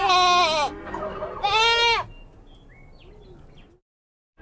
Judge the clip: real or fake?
real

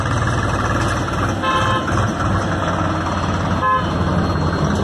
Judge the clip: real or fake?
real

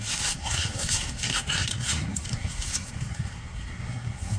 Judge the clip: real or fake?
fake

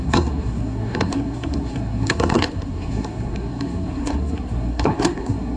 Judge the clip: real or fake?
fake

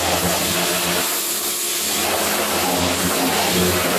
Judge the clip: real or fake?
real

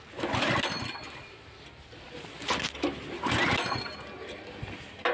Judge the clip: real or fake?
real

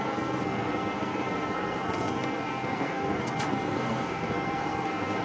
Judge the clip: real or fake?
fake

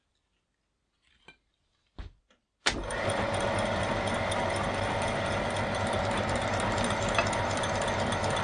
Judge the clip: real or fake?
real